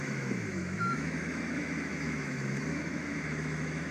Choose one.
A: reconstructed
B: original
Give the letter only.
A